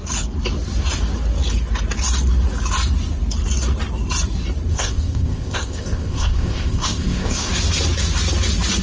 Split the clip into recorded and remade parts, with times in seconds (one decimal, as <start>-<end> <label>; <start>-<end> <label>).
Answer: 0.0-4.7 recorded; 4.7-7.5 remade; 7.5-8.8 recorded